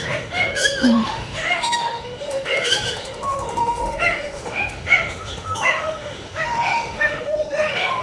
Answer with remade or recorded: remade